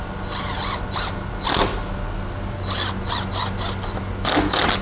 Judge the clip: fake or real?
real